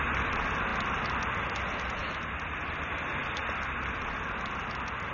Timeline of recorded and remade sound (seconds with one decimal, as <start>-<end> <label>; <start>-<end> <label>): 0.0-5.1 recorded